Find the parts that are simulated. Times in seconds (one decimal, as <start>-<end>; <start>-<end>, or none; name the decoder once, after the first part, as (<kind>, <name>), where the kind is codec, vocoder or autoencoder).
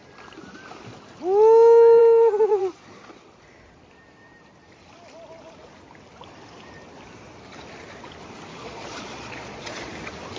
2.5-3.1 (vocoder, Vocos); 8.6-9.9